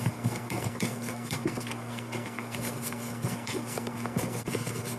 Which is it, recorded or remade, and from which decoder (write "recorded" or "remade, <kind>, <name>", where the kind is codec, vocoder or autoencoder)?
remade, codec, SNAC